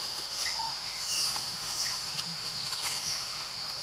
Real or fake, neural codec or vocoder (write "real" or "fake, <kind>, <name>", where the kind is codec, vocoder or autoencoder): fake, autoencoder, DAC-VAE